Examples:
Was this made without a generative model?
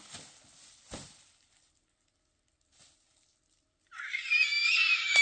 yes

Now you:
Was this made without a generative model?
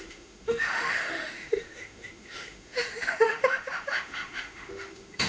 no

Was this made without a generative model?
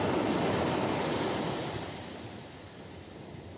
yes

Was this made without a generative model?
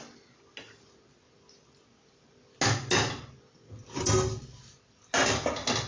yes